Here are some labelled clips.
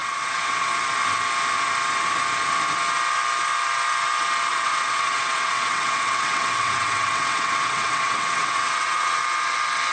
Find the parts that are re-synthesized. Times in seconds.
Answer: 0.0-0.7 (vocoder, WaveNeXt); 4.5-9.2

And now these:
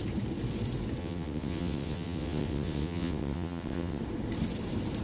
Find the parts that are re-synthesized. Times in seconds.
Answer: 1.0-4.0 (vocoder, WaveNeXt)